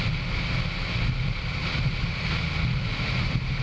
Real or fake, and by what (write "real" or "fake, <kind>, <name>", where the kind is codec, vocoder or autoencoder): real